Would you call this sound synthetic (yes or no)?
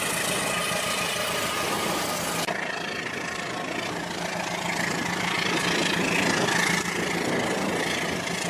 no